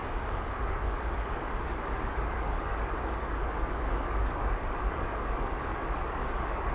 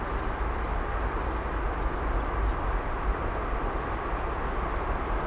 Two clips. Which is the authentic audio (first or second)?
second